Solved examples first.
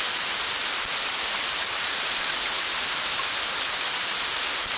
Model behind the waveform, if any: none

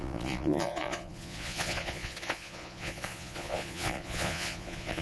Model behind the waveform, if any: vocoder, Vocos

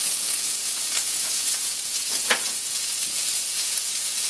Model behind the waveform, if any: vocoder, Vocos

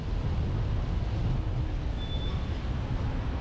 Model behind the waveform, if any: none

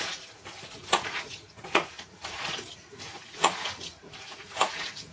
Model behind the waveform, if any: vocoder, Vocos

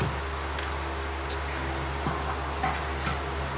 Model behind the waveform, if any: none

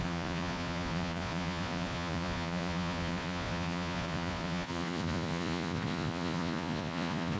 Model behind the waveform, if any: vocoder, Vocos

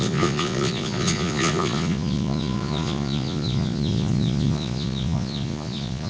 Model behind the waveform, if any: vocoder, Vocos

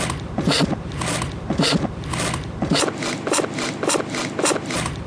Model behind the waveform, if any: none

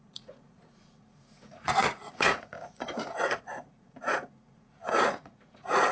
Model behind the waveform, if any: vocoder, Vocos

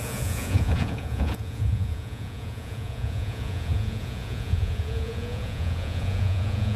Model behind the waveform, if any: vocoder, Vocos